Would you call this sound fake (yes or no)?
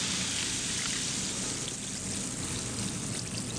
no